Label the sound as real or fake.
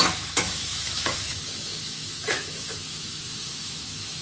fake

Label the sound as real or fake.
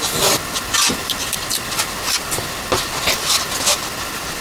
real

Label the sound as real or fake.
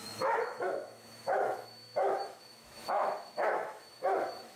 fake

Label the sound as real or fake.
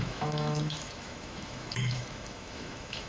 fake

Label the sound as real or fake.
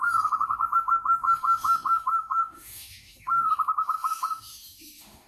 fake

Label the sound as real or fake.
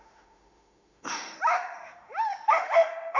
fake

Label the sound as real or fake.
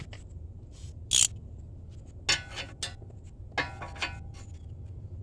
real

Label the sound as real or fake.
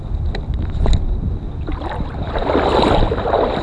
real